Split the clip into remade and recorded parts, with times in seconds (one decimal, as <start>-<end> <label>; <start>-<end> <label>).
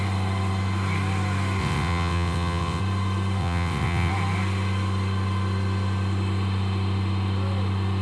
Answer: 0.0-1.6 recorded; 1.6-2.8 remade; 2.8-3.4 recorded; 3.4-4.1 remade; 4.1-8.0 recorded